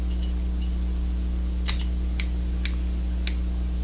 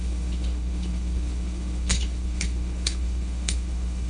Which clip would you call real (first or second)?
first